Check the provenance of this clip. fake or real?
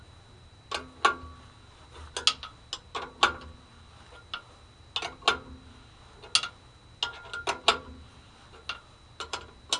real